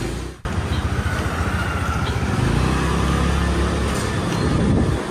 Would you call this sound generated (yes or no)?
no